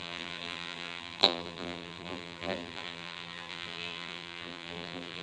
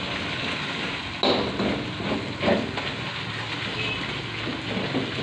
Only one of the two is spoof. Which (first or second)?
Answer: first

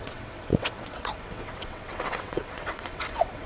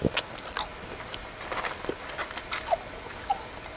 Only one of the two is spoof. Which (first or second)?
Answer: first